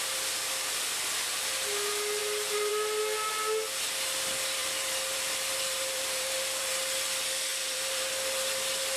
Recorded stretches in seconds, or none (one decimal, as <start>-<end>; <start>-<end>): 0.0-4.6; 6.7-7.5; 8.1-9.0